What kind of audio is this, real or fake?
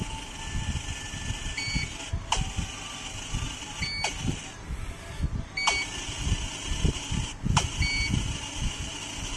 real